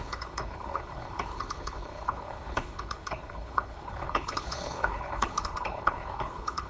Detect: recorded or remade remade